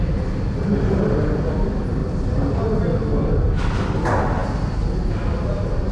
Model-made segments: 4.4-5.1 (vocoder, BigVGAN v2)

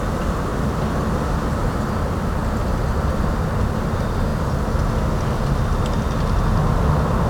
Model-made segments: none

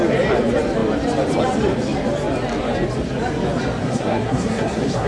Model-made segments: 3.8-5.1 (codec, SNAC)

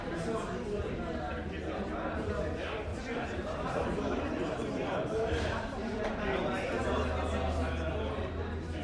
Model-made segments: 2.9-6.1 (vocoder, BigVGAN v2)